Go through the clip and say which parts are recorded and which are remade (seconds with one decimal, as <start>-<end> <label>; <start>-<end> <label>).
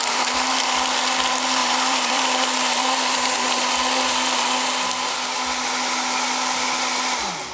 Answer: 0.0-0.6 remade; 0.6-1.6 recorded; 1.6-3.7 remade; 3.7-7.5 recorded